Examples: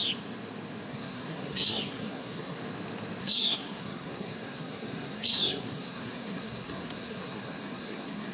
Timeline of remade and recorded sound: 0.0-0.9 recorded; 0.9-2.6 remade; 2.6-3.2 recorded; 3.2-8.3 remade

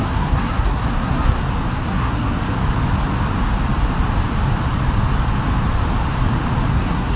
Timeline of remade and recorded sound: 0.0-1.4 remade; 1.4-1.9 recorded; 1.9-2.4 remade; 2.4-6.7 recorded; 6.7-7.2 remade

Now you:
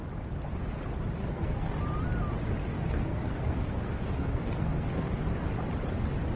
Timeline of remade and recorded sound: 0.0-1.2 recorded; 1.2-1.8 remade; 1.8-2.6 recorded; 2.6-5.2 remade; 5.2-6.4 recorded